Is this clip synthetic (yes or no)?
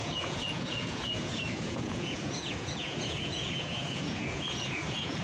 yes